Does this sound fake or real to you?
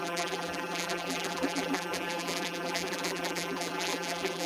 fake